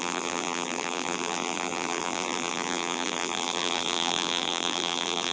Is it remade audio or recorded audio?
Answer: remade